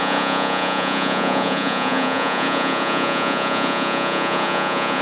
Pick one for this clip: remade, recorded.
remade